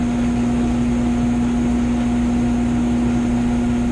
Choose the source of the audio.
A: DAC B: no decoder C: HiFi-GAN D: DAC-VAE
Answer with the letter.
B